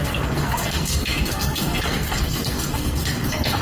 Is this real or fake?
fake